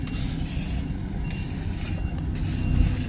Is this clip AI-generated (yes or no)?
no